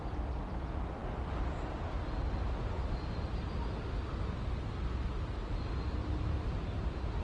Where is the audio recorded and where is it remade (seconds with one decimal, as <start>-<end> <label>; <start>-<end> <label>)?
0.0-7.2 recorded